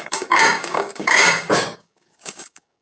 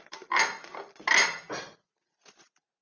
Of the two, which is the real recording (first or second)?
second